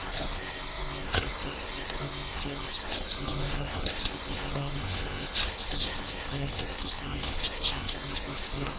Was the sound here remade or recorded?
remade